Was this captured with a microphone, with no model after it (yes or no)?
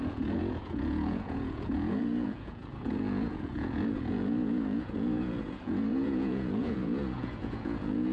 no